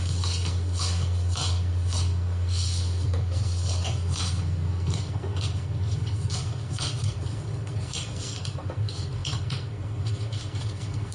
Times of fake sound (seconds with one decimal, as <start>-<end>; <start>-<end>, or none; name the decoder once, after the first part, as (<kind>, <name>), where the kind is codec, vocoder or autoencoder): 0.0-11.1 (codec, SNAC)